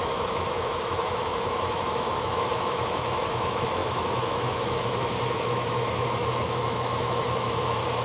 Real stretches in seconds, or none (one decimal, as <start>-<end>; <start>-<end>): none